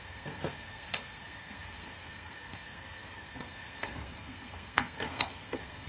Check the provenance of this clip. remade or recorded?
remade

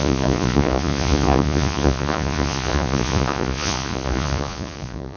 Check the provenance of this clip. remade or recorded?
remade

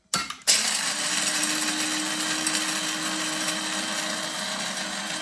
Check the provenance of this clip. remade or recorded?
recorded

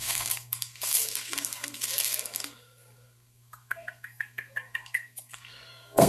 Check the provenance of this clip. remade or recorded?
remade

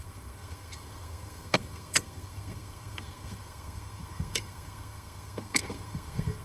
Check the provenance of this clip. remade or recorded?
remade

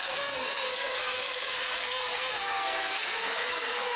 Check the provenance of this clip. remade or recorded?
remade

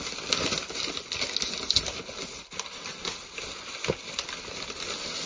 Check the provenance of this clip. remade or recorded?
recorded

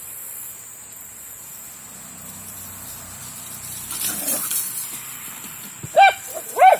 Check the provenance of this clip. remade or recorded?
remade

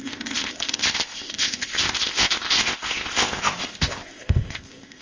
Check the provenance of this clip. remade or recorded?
remade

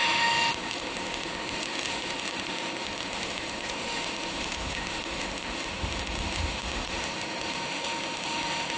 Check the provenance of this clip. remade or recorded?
remade